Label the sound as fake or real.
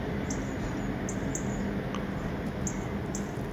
real